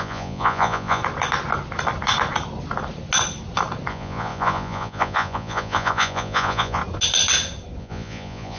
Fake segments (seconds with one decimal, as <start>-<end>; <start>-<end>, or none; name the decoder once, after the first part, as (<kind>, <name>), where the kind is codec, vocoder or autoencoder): 0.0-1.0 (vocoder, Vocos); 3.9-6.8; 7.8-8.6